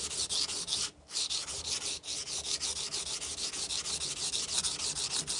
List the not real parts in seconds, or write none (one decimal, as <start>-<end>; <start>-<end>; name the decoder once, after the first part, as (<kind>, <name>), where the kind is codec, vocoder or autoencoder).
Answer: none